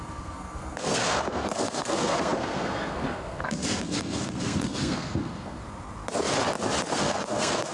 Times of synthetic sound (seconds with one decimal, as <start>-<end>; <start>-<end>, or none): 0.0-5.6; 6.9-7.7